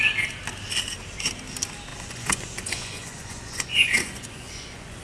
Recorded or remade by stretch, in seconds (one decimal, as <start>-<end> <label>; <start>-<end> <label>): 0.0-1.9 recorded; 1.9-5.0 remade